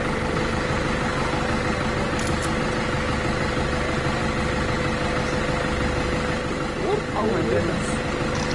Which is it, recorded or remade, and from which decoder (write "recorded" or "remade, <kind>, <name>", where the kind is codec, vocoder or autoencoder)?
recorded